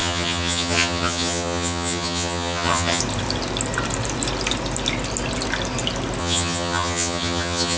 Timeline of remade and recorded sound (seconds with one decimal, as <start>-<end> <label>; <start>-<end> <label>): 0.0-3.0 remade; 3.0-6.2 recorded; 6.2-7.8 remade